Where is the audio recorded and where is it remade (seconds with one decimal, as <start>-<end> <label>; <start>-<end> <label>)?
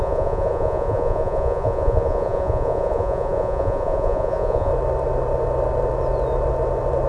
0.0-4.7 remade; 4.7-7.1 recorded